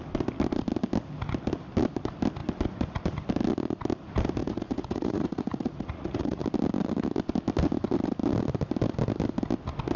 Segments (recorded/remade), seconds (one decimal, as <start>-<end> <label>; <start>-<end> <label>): 0.0-4.4 recorded; 4.4-6.4 remade; 6.4-10.0 recorded